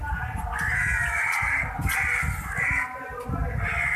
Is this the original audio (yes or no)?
yes